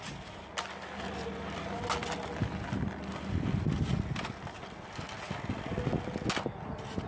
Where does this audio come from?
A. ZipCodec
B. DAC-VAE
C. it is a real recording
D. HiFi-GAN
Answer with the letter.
C